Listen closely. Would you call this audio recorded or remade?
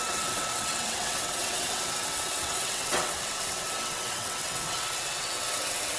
remade